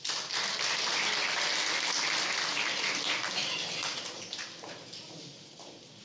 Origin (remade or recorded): recorded